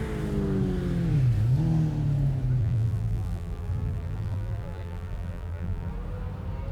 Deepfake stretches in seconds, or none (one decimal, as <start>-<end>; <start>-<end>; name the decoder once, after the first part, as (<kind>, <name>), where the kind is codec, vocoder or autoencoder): 2.6-5.9 (vocoder, BigVGAN v2)